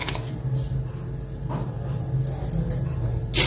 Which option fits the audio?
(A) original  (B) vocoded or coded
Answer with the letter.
A